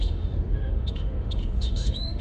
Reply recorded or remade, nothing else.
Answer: remade